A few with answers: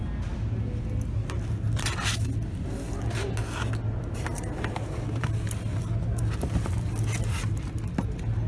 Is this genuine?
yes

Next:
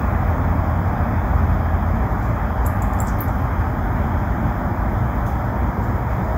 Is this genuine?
yes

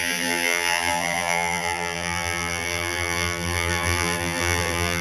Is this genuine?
no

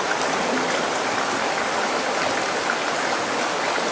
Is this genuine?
yes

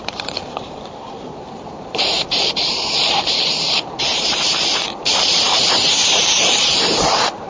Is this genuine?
no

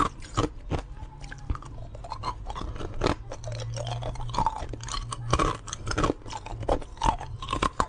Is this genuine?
yes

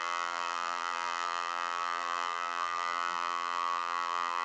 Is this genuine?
no